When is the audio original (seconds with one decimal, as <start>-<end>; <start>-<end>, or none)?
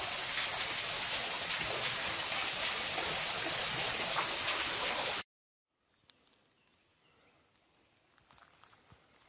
0.0-9.3